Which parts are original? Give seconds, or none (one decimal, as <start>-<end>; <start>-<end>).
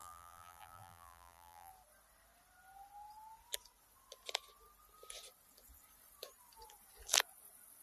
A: 1.7-7.8